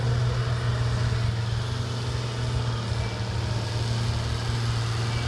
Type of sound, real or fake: real